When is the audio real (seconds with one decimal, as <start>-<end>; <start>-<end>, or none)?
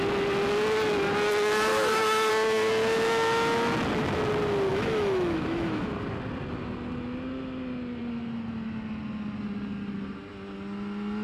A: 0.0-1.7; 2.3-4.7; 5.9-11.2